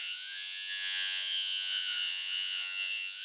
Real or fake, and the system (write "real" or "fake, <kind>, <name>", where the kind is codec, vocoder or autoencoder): fake, vocoder, Vocos